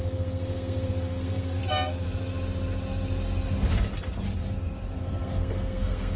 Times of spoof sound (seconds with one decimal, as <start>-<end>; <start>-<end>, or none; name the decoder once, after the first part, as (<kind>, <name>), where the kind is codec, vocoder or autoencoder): 0.0-1.6 (codec, SNAC); 5.0-6.2